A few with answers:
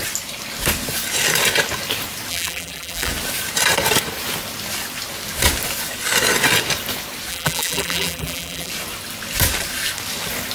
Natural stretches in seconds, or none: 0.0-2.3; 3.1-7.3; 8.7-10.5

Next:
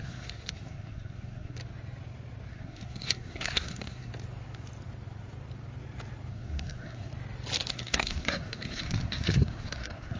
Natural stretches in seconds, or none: 1.6-2.5; 4.1-6.3; 7.1-7.7

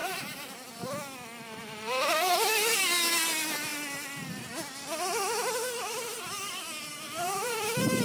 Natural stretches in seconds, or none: 0.7-1.6; 2.8-6.9

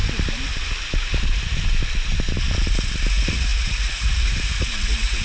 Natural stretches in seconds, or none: 0.0-3.1

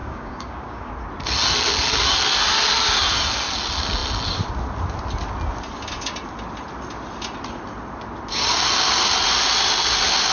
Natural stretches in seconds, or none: 0.9-10.3